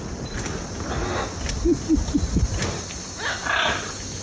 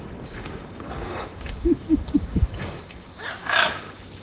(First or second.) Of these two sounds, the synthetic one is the second